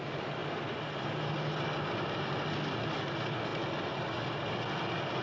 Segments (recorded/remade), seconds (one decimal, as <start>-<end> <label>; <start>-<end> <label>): 0.0-5.2 recorded